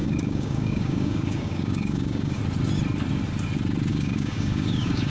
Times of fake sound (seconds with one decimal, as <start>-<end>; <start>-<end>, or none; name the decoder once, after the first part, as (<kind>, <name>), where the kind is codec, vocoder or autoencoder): 0.0-2.4 (codec, DAC); 3.9-5.1